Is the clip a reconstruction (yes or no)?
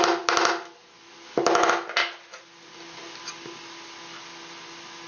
no